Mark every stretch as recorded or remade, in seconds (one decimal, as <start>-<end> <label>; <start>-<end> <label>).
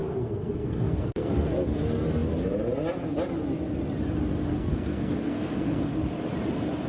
0.0-1.3 remade; 1.3-4.5 recorded; 4.5-5.9 remade; 5.9-6.9 recorded